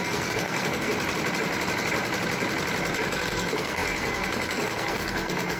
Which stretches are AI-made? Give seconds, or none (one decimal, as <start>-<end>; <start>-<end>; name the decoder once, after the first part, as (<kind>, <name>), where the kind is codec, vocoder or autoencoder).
0.0-0.9 (codec, SNAC); 3.1-5.6